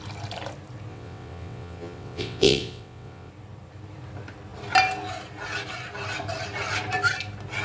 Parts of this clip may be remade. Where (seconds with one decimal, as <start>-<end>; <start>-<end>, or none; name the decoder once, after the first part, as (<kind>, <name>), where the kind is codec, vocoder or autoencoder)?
0.9-3.3 (vocoder, WaveNeXt)